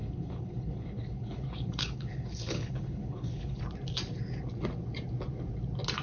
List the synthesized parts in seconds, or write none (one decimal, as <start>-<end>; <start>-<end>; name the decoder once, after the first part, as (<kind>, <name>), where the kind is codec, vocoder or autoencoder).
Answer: 0.0-3.6 (codec, HILCodec)